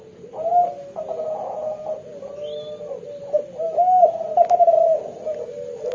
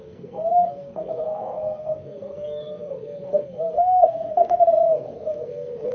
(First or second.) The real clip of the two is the first